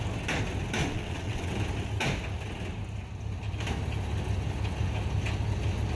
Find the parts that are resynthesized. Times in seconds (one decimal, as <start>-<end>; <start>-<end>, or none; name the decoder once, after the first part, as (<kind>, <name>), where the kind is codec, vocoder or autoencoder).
0.8-1.5 (vocoder, WaveNeXt)